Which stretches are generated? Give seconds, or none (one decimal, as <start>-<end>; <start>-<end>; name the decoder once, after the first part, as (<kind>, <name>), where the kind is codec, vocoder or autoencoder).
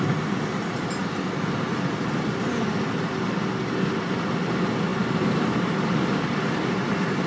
none